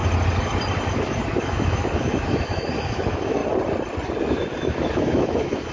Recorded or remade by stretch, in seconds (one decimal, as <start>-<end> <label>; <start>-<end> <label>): 0.0-0.9 recorded; 0.9-3.4 remade; 3.4-4.2 recorded; 4.2-5.7 remade